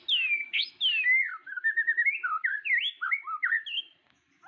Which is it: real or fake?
real